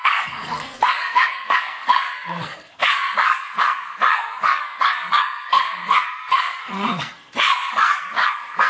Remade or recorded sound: remade